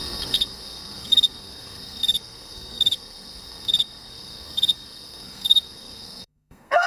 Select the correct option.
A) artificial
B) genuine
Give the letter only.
A